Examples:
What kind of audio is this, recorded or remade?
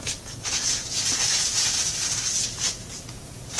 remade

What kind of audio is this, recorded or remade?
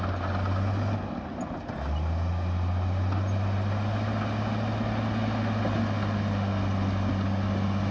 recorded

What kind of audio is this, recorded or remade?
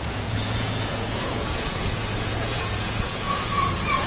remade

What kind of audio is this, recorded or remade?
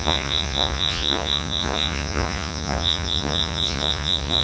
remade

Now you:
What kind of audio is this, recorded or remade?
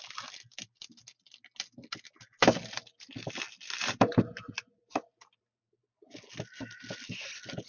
recorded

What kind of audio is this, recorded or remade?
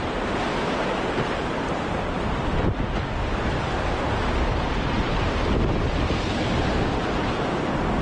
recorded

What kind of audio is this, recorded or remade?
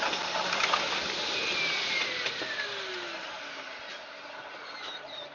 recorded